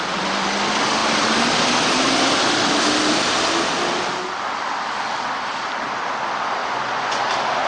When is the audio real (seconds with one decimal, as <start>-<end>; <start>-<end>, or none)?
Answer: 0.0-6.6; 7.2-7.7